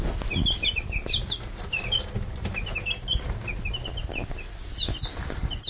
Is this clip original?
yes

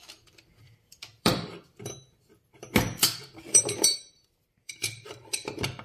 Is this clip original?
no